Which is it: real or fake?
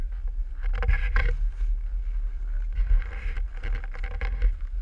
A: real